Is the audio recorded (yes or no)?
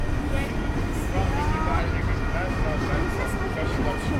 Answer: yes